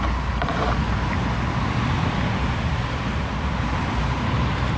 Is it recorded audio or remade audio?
recorded